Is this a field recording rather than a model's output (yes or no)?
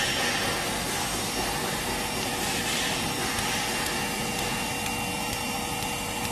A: yes